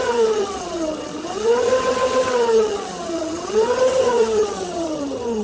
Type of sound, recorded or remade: remade